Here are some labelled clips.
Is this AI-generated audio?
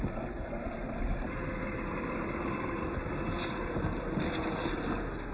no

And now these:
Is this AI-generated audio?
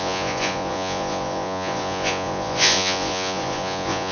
yes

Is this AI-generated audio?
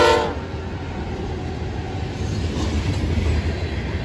no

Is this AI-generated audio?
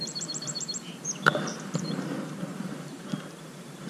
yes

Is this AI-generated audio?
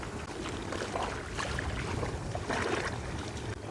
no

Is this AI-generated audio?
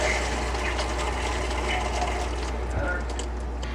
no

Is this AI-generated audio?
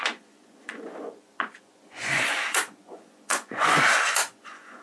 yes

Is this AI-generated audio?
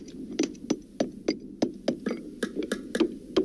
no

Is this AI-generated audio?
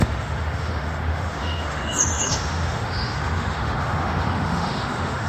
yes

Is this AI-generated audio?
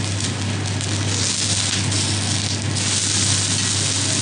no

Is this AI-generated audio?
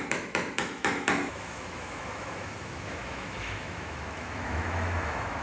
yes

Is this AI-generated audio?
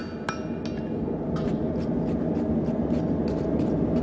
no